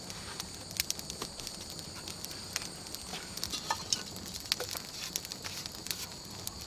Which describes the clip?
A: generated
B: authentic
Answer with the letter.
B